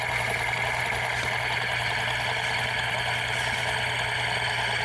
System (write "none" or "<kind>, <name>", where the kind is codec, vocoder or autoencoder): none